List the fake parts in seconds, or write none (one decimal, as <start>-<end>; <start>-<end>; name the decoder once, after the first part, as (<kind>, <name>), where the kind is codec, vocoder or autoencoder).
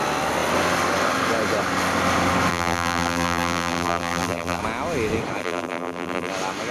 2.5-4.6 (vocoder, BigVGAN v2); 5.4-6.3